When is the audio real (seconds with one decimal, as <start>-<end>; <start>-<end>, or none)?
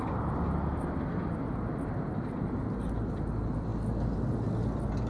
0.0-5.1